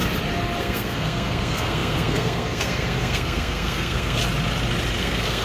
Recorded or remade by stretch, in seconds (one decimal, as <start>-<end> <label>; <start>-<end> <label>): 0.0-0.6 recorded; 0.6-4.2 remade; 4.2-5.0 recorded; 5.0-5.4 remade